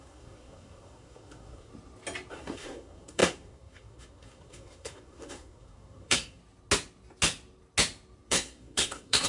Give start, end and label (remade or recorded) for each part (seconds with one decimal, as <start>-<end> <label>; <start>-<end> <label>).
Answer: 0.0-1.7 remade; 1.7-2.3 recorded; 2.3-6.4 remade; 6.4-8.3 recorded; 8.3-9.3 remade